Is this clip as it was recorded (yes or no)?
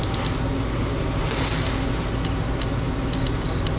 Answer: yes